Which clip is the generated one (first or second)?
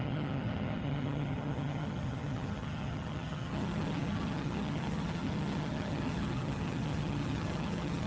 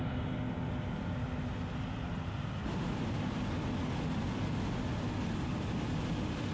first